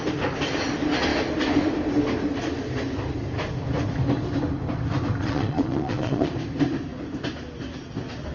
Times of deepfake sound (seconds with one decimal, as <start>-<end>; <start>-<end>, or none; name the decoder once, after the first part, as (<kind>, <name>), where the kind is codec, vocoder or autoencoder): 5.2-6.3 (vocoder, Vocos)

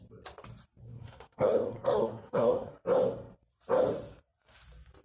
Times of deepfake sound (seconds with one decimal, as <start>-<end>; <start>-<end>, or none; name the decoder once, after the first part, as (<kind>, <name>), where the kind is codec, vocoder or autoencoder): 0.8-2.7 (codec, SNAC)

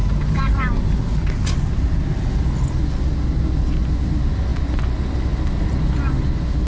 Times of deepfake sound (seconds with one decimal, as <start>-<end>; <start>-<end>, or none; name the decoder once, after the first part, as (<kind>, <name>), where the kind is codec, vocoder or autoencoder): none